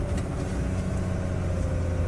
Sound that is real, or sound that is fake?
real